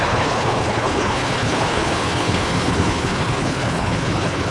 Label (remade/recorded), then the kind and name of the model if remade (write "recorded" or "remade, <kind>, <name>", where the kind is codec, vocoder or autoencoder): remade, codec, HILCodec